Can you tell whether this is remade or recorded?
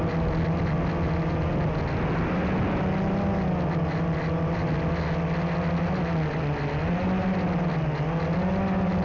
recorded